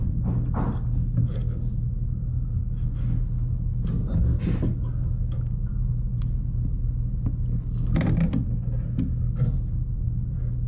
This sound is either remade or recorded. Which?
recorded